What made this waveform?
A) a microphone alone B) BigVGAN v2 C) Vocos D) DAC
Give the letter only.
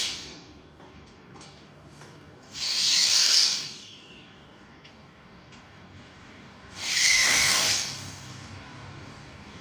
D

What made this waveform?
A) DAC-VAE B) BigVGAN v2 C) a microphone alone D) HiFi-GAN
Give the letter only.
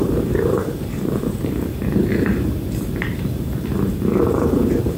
B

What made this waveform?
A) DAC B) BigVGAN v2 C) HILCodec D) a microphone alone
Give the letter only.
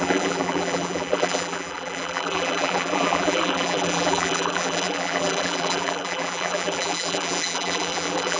B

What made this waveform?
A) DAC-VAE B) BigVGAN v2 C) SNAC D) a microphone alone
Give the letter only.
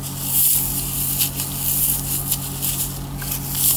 D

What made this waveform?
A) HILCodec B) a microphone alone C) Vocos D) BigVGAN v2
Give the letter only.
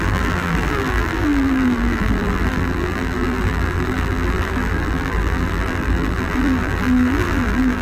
D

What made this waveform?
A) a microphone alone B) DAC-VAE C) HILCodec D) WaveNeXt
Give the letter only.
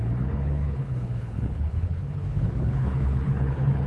C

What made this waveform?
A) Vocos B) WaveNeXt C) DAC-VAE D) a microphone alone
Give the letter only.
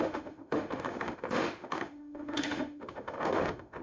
C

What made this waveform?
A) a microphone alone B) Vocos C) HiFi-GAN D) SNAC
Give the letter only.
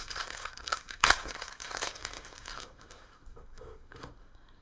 D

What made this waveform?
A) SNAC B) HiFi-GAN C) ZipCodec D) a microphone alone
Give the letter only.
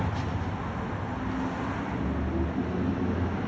D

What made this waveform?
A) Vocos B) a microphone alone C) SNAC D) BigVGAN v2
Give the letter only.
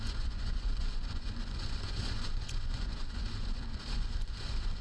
A